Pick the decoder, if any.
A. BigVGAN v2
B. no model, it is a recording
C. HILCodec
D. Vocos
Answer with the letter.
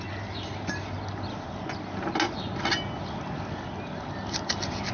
B